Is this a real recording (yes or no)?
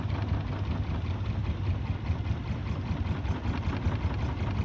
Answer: yes